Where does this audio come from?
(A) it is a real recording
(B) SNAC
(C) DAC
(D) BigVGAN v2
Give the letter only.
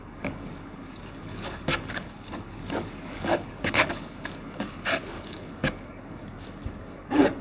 C